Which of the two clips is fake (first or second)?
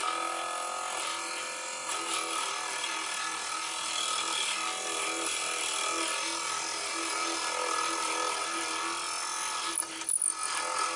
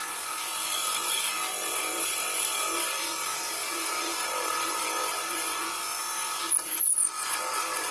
second